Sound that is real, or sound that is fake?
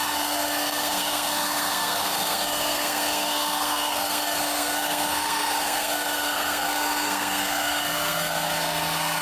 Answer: fake